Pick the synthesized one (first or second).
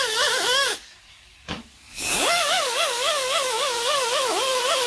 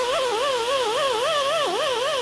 first